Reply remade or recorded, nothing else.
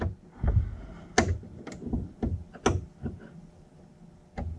recorded